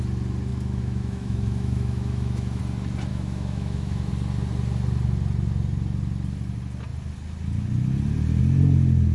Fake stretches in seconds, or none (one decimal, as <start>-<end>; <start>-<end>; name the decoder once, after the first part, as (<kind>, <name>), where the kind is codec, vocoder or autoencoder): 0.5-2.6 (autoencoder, DAC-VAE); 3.1-4.1